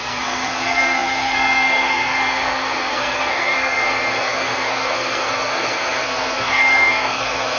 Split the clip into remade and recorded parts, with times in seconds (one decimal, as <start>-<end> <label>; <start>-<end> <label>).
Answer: 0.0-7.6 remade